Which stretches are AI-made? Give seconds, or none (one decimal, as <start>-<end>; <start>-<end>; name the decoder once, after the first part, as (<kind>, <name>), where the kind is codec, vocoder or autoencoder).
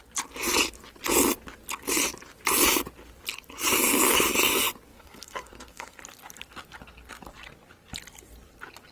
4.9-6.0 (codec, SNAC)